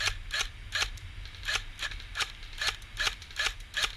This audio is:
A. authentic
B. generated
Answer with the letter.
A